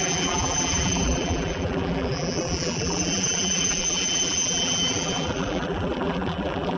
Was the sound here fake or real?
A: fake